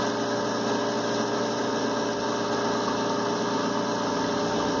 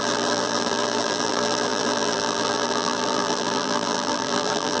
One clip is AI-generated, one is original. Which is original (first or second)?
first